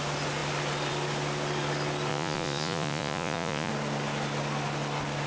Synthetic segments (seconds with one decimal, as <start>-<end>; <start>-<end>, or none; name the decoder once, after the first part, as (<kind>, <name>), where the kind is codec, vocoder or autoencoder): 2.1-3.7 (vocoder, Vocos)